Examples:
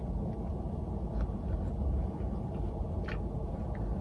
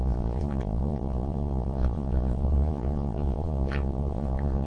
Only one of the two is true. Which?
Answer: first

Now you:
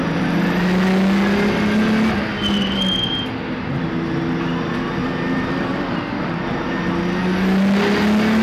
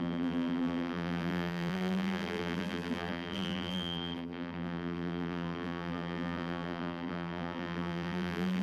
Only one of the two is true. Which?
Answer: first